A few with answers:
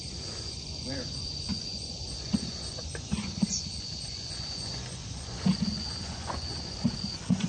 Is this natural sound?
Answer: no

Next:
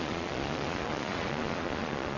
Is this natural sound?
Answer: no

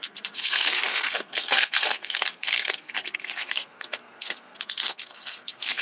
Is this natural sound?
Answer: no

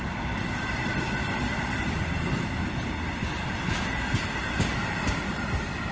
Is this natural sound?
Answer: yes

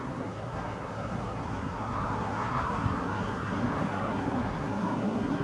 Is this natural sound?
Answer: no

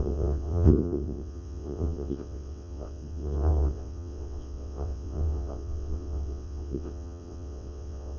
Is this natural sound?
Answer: no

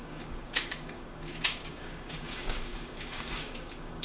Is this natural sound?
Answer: no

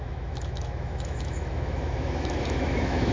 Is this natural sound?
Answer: no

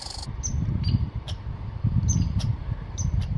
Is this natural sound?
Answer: no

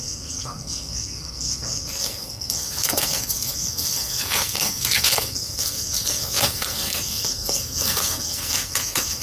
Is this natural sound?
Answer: no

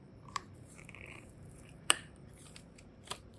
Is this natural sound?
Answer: no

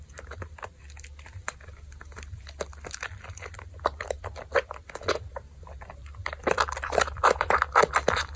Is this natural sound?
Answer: no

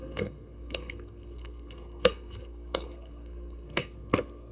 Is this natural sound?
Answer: no